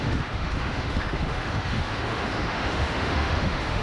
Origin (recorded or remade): remade